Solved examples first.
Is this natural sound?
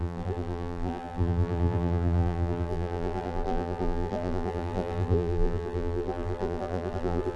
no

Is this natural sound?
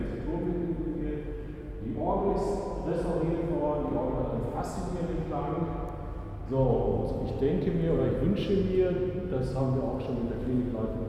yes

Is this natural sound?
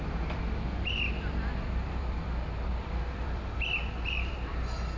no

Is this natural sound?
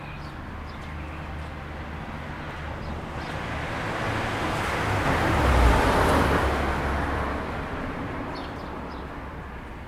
yes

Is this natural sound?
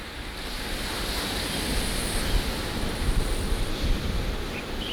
no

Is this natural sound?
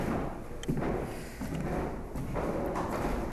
yes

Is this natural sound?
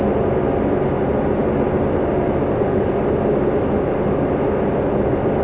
yes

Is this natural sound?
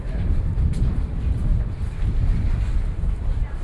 no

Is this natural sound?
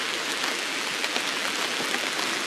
no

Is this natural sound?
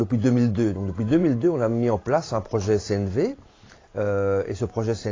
no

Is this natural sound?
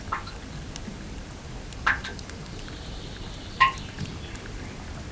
no